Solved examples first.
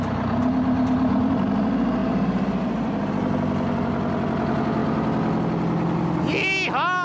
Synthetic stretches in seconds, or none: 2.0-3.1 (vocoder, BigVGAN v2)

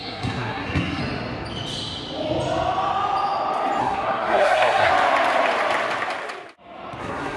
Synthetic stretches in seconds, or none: 0.0-1.0 (codec, SNAC); 3.8-4.9; 7.0-7.4

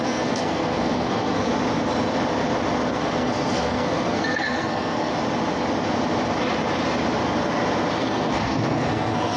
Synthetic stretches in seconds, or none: 0.0-1.5 (codec, SNAC); 2.9-5.1; 8.0-9.4

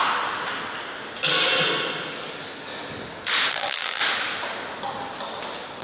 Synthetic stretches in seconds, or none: 3.5-4.0 (vocoder, BigVGAN v2)

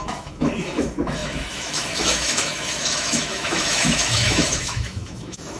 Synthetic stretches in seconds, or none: 0.0-5.6 (autoencoder, DAC-VAE)

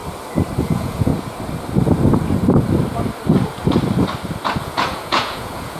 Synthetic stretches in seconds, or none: 0.6-1.1 (vocoder, Vocos); 4.6-5.8

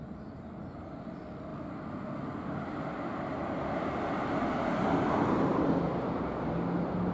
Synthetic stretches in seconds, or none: none

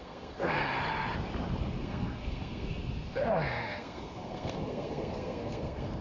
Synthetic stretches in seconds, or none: 0.0-0.6 (codec, SNAC); 1.8-6.0